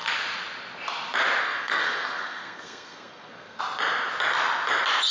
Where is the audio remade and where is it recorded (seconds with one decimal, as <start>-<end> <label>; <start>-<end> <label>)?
0.0-1.4 recorded; 1.4-3.6 remade; 3.6-5.1 recorded